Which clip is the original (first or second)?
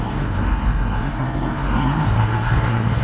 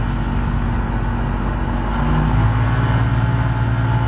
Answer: second